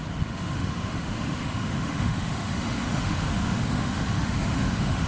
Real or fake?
fake